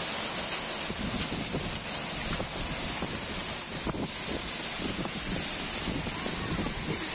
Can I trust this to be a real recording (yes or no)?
yes